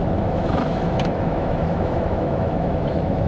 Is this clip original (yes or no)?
no